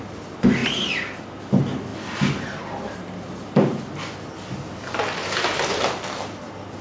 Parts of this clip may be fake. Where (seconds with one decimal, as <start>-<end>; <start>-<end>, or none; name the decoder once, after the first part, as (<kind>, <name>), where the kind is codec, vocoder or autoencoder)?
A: none